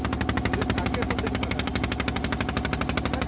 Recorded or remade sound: recorded